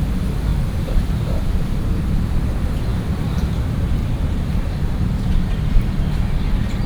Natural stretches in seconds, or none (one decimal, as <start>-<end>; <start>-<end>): 0.0-0.5; 2.2-2.9; 3.6-4.0; 5.7-6.9